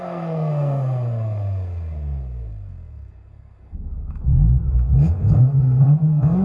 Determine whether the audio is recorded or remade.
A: remade